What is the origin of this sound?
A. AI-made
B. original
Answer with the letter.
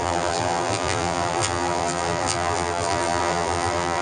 A